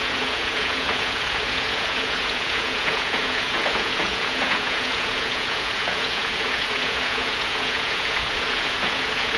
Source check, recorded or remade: remade